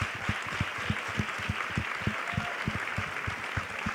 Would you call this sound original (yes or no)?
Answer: yes